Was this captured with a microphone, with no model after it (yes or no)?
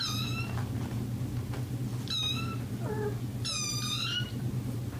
yes